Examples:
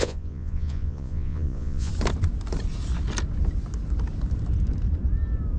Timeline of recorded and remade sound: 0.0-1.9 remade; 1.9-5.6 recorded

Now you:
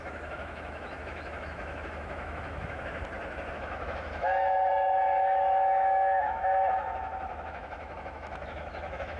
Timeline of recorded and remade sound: 0.0-3.0 remade; 3.0-3.5 recorded; 3.5-9.2 remade

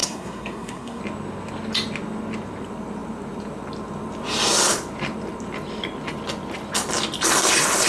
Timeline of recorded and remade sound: 0.0-1.0 remade; 1.0-7.9 recorded

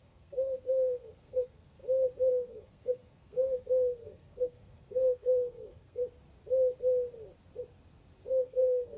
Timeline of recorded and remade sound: 0.0-1.8 remade; 1.8-2.3 recorded; 2.3-6.0 remade; 6.0-8.3 recorded; 8.3-9.0 remade